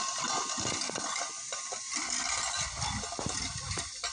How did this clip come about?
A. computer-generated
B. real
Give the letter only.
B